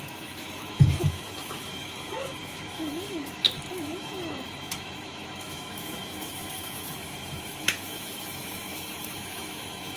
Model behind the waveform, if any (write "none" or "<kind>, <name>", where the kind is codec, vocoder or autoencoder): autoencoder, DAC-VAE